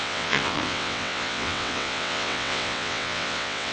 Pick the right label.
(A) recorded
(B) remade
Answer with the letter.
B